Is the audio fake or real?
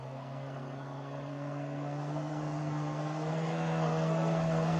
fake